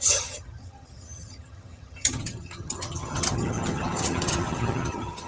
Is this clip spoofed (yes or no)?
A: yes